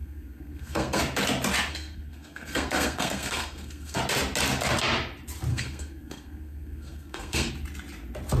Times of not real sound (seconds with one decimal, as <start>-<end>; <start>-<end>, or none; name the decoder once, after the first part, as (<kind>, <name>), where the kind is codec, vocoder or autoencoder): 0.0-1.0 (codec, SNAC); 1.7-4.0; 5.5-7.5